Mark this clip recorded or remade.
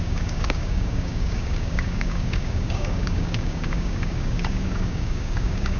remade